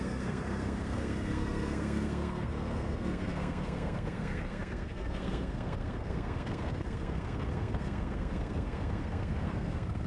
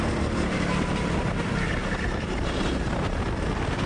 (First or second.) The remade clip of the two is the first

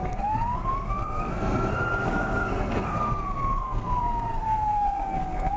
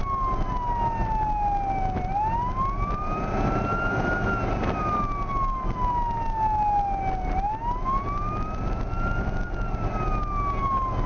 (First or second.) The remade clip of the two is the first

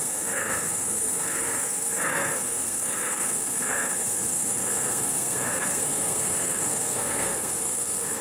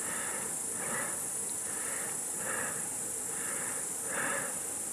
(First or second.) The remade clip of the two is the first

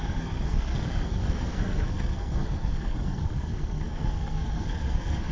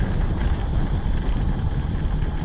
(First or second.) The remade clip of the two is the first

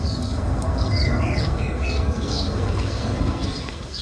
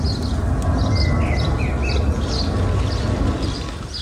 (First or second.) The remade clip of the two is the first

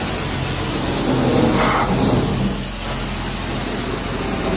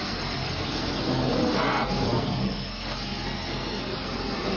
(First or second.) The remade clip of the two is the second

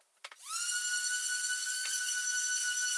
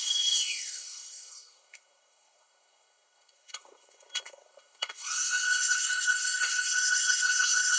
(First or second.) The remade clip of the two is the second